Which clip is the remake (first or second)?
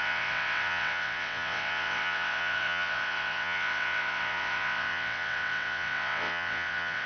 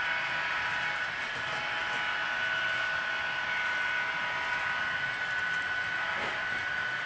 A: first